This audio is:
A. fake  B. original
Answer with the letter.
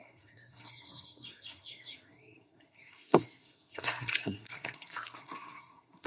A